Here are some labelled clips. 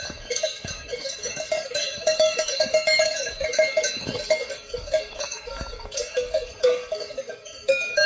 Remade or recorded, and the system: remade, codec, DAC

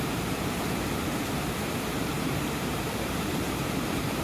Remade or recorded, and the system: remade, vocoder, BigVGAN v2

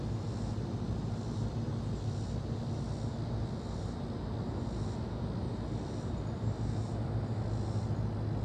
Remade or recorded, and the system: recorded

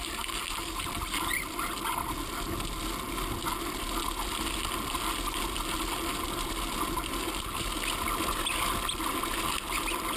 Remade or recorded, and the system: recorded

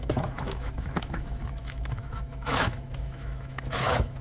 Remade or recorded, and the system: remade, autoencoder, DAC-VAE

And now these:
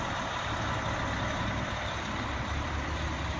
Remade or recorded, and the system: recorded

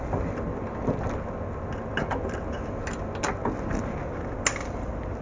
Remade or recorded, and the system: recorded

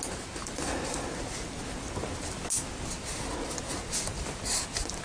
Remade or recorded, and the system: recorded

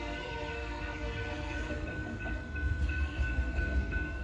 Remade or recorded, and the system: remade, codec, SNAC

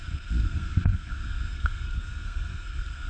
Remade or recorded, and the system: remade, codec, SNAC